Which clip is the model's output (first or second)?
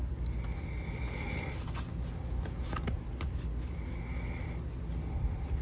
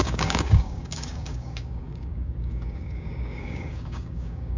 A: second